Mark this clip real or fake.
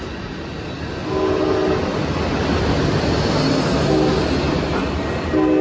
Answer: real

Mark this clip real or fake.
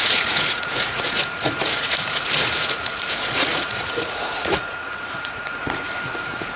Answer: fake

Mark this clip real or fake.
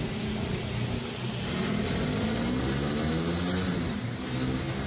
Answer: real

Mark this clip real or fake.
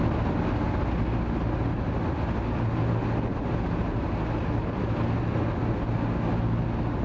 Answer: real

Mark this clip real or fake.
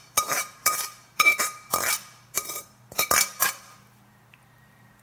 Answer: fake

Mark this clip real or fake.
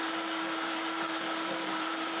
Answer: fake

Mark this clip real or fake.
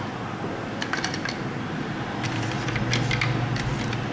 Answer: real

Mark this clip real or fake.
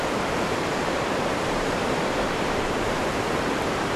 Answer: fake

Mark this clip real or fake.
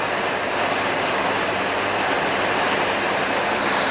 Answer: real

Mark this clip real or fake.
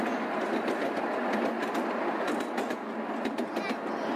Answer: real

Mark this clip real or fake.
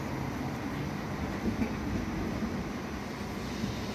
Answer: real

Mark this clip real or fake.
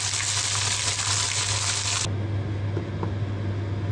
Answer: real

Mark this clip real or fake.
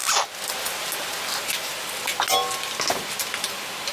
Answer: real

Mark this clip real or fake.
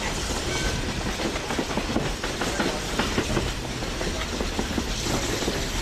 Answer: real